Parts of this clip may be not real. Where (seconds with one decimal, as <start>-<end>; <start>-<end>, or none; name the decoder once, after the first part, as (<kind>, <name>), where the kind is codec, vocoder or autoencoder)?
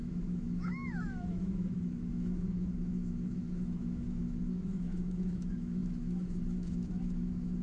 0.0-7.6 (autoencoder, DAC-VAE)